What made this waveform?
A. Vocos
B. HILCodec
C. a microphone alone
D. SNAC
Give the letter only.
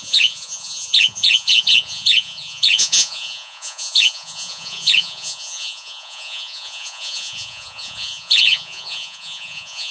A